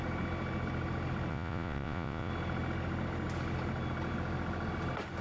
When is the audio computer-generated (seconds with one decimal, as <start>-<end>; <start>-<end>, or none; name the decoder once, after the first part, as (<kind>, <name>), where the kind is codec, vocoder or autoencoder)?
1.3-2.3 (vocoder, Vocos)